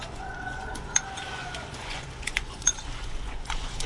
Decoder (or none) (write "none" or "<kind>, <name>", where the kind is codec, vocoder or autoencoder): vocoder, Vocos